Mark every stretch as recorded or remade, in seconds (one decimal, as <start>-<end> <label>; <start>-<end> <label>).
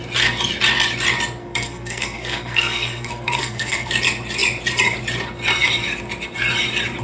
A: 0.0-1.4 recorded; 1.4-3.9 remade; 3.9-7.0 recorded